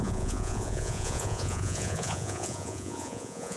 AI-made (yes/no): yes